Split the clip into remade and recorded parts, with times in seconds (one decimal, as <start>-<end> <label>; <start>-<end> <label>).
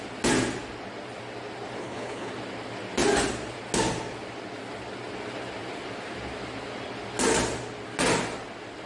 0.0-1.8 recorded; 1.8-2.3 remade; 2.3-8.9 recorded